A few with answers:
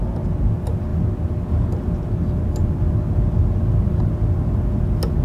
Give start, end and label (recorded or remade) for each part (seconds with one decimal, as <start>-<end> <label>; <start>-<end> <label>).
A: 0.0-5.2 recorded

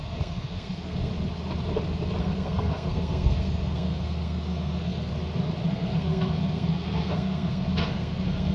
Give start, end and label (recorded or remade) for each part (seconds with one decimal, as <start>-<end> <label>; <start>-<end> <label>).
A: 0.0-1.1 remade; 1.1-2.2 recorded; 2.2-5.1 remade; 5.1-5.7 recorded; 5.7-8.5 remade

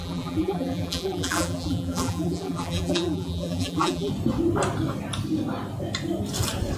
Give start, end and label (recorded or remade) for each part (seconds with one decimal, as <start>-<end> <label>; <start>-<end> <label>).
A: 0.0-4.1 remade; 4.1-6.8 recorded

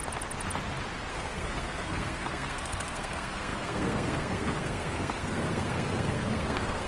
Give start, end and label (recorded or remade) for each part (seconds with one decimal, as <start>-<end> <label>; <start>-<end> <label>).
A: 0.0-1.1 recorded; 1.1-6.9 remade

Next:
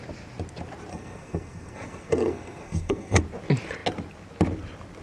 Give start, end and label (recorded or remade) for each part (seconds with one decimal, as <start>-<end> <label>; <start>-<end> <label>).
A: 0.0-0.9 recorded; 0.9-3.2 remade; 3.2-5.0 recorded